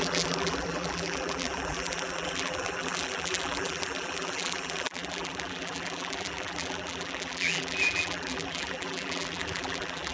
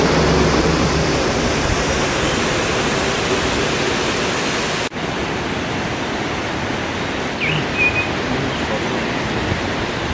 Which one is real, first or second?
second